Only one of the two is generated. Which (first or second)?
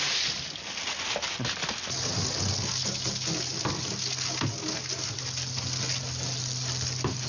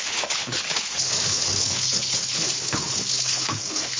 second